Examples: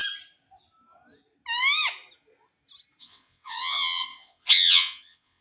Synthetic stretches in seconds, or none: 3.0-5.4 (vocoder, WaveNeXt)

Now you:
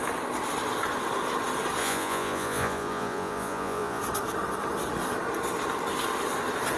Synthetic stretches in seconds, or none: 1.8-4.0 (vocoder, Vocos)

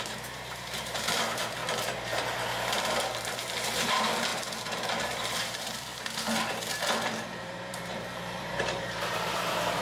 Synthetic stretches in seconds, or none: 0.0-1.6 (vocoder, BigVGAN v2); 2.8-4.3; 4.9-5.9; 7.4-9.8

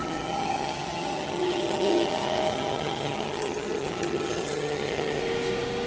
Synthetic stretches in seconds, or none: 0.0-5.2 (vocoder, HiFi-GAN)

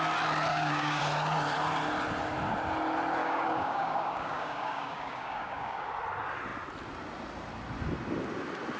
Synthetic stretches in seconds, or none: 0.5-1.0 (codec, DAC); 3.2-5.9

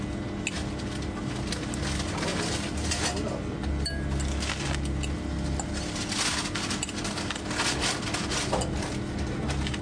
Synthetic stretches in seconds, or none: 2.3-3.1 (vocoder, BigVGAN v2)

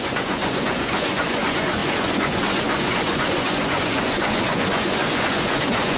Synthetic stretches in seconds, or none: 0.0-6.0 (vocoder, Vocos)

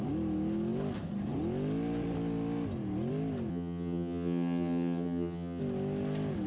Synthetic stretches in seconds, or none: 3.5-5.6 (vocoder, HiFi-GAN)